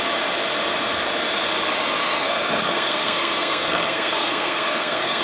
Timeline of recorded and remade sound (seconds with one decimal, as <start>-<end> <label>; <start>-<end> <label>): 0.0-2.0 recorded; 2.0-5.2 remade